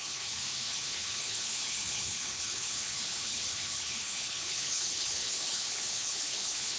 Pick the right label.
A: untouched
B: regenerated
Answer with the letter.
B